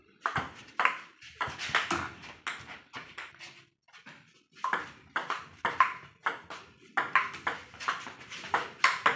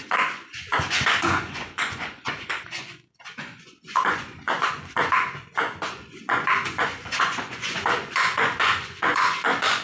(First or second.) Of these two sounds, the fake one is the second